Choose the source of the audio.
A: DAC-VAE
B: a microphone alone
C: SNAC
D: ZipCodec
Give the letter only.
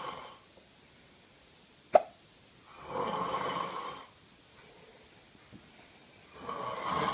B